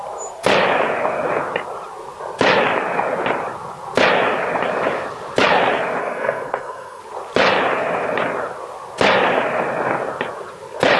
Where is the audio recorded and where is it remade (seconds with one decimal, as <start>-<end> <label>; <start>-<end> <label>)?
0.0-6.0 recorded; 6.0-7.0 remade; 7.0-11.0 recorded